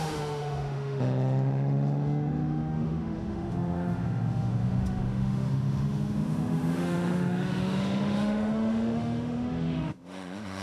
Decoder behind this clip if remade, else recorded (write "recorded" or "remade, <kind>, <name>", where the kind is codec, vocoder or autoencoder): remade, autoencoder, DAC-VAE